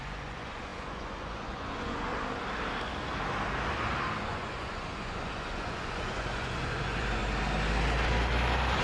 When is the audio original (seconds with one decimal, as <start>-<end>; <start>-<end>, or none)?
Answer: 2.1-4.2; 7.2-8.8